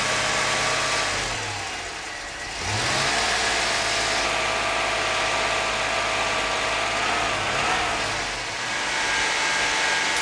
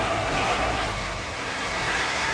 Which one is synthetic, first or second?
second